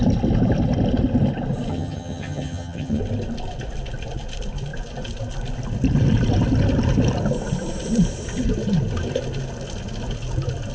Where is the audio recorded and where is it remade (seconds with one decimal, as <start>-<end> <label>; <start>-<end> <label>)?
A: 0.0-1.7 recorded; 1.7-3.0 remade; 3.0-10.7 recorded